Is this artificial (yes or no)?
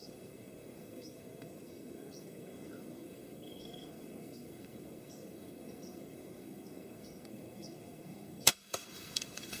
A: yes